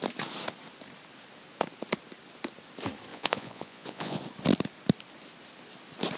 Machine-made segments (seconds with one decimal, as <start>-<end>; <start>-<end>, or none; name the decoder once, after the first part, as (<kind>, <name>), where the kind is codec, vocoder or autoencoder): 3.1-4.2 (vocoder, Vocos)